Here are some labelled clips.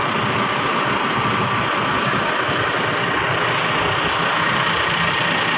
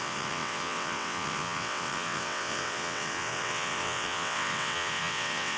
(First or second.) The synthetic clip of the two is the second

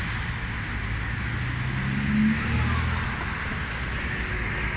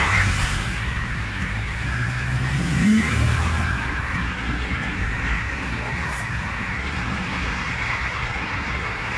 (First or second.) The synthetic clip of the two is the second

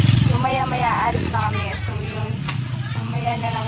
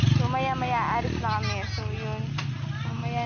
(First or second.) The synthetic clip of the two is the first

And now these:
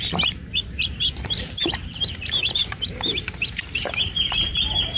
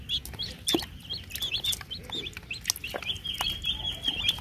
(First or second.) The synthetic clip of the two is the first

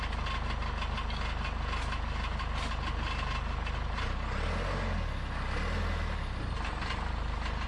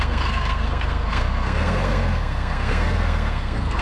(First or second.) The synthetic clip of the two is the second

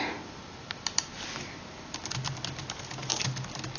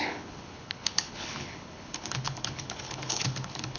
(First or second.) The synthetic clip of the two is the second